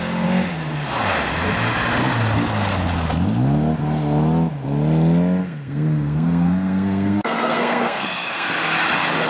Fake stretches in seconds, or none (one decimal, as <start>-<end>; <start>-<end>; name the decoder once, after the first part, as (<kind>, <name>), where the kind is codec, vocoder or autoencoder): 5.4-8.5 (codec, SNAC)